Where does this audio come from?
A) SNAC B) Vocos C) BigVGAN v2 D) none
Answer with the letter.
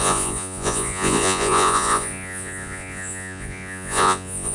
B